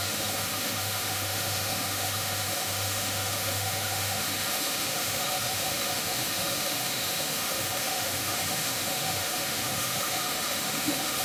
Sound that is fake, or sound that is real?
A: fake